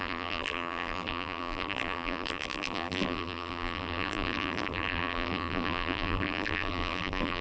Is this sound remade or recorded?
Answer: remade